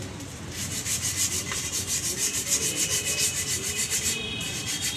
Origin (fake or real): fake